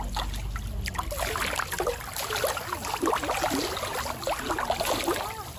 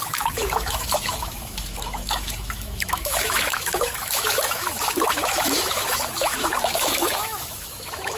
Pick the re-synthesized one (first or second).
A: second